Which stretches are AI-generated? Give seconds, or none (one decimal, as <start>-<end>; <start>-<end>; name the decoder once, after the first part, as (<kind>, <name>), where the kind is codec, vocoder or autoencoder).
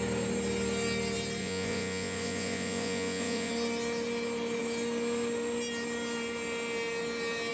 1.4-3.5 (vocoder, Vocos)